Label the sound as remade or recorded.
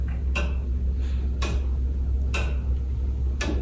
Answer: recorded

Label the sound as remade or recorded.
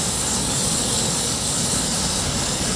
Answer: remade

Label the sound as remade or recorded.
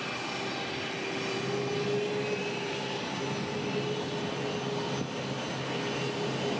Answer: recorded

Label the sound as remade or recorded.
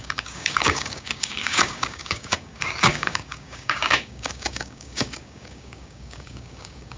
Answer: remade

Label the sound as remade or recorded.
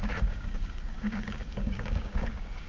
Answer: remade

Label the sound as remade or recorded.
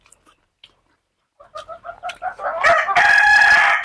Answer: recorded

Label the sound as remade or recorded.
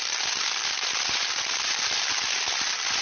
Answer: recorded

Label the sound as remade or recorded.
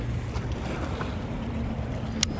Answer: recorded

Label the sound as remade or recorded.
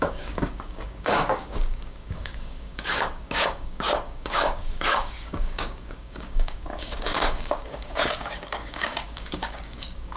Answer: remade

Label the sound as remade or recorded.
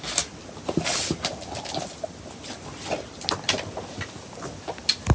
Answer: recorded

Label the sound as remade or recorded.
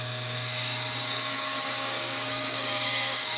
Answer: remade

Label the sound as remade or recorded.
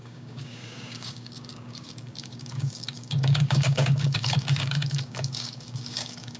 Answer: remade